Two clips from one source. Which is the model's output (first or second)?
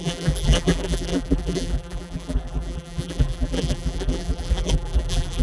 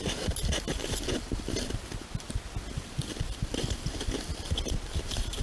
first